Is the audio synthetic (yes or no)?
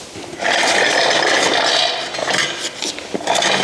no